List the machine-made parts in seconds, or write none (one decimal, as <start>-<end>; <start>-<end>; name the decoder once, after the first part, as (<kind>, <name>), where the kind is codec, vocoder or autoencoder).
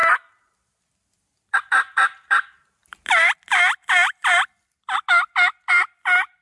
none